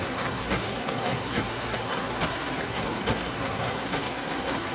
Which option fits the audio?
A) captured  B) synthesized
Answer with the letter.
B